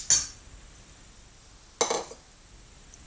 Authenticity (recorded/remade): recorded